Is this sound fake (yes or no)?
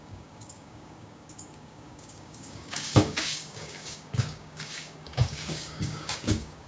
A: yes